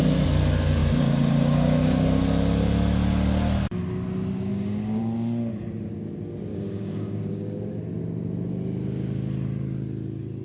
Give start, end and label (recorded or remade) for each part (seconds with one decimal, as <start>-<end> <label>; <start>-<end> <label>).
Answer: 0.0-0.8 recorded; 0.8-2.2 remade; 2.2-4.5 recorded; 4.5-5.0 remade; 5.0-6.5 recorded; 6.5-7.8 remade; 7.8-10.4 recorded